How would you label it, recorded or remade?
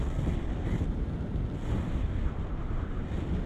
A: recorded